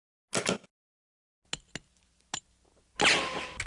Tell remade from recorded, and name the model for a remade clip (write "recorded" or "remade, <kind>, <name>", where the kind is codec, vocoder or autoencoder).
recorded